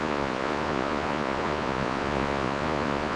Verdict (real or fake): fake